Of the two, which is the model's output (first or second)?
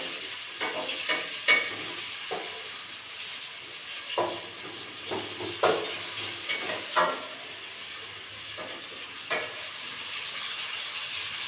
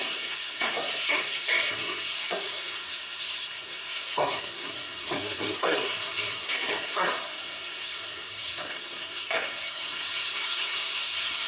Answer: second